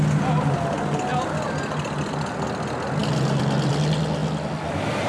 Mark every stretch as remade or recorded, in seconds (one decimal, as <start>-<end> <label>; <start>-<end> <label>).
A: 0.0-5.1 recorded